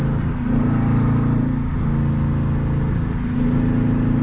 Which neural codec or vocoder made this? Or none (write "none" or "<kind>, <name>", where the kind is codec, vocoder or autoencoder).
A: none